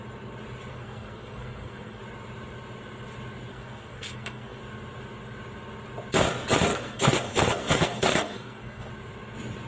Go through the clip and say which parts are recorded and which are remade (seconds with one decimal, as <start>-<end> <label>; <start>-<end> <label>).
0.0-0.7 recorded; 0.7-2.0 remade; 2.0-3.5 recorded; 3.5-4.6 remade; 4.6-6.7 recorded; 6.7-8.9 remade; 8.9-9.7 recorded